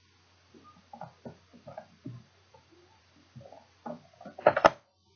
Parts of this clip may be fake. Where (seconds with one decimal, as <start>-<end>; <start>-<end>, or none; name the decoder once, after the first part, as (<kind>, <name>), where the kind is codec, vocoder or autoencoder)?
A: 1.5-3.0 (vocoder, BigVGAN v2)